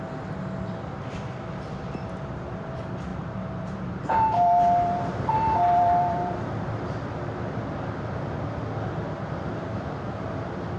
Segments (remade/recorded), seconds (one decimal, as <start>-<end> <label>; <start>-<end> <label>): 0.0-3.1 recorded; 3.1-7.6 remade; 7.6-10.8 recorded